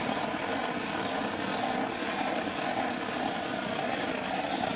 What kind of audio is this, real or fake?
real